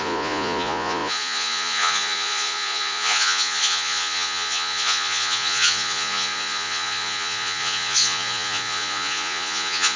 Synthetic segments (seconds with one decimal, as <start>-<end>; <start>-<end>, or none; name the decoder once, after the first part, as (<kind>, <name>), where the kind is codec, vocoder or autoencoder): 0.0-10.0 (vocoder, Vocos)